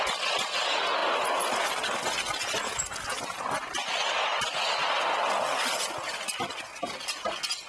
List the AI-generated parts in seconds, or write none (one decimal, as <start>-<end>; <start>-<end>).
none